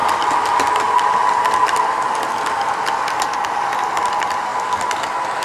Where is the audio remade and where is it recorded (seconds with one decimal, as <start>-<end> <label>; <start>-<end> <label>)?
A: 0.0-5.4 recorded